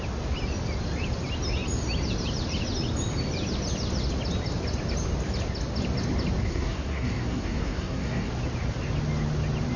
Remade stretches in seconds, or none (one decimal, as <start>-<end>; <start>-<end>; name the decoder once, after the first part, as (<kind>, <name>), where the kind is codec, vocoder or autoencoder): 6.4-8.3 (codec, SNAC)